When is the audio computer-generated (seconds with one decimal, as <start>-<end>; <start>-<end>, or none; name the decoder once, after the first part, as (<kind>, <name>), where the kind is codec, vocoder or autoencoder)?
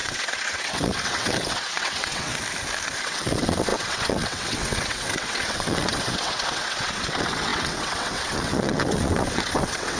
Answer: 0.0-2.3 (vocoder, WaveNeXt); 3.0-10.0